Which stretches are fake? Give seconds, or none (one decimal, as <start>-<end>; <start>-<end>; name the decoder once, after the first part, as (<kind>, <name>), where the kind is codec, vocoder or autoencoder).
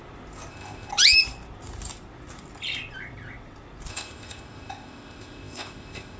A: 0.5-0.9 (codec, ZipCodec); 3.9-6.2